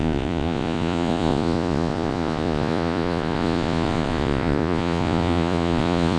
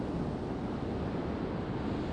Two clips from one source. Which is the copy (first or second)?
first